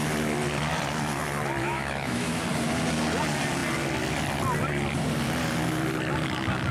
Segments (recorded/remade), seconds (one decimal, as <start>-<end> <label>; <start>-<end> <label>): 0.0-1.6 recorded; 1.6-2.4 remade; 2.4-6.7 recorded